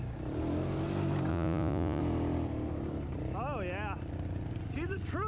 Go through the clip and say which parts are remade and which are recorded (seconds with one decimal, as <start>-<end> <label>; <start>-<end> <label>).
0.0-1.3 recorded; 1.3-2.0 remade; 2.0-5.3 recorded